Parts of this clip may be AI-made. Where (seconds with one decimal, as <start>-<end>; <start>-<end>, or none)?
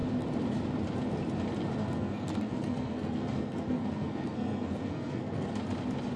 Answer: 1.8-5.5